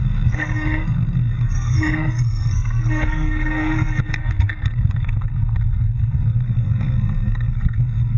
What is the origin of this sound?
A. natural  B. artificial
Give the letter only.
B